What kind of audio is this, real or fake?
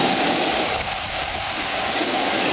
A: fake